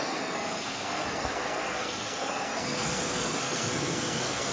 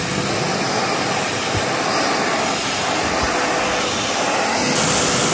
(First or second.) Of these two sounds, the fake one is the first